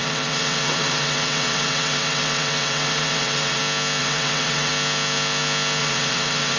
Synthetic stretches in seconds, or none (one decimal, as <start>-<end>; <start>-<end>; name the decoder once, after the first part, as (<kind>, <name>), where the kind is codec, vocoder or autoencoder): 0.0-3.6 (vocoder, WaveNeXt); 4.0-4.7; 5.8-6.6